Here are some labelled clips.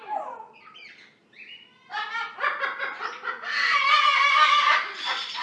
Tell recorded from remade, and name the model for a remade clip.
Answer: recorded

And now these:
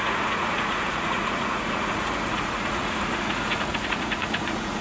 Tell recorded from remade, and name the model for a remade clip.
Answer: remade, vocoder, Vocos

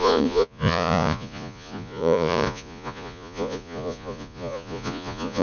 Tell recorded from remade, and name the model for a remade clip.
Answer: remade, vocoder, Vocos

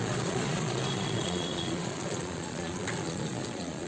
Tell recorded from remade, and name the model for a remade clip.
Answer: remade, vocoder, Vocos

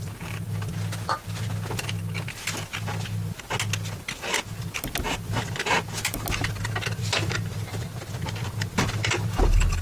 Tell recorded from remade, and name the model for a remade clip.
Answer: recorded